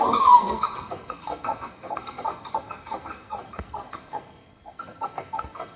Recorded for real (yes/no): no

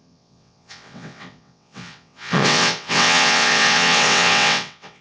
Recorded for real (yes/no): no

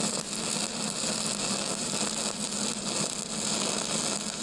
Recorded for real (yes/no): yes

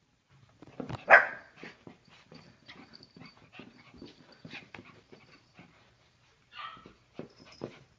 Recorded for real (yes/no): no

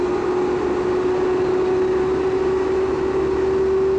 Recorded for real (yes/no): yes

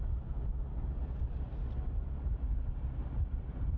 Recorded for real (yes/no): yes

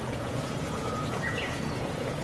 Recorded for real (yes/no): no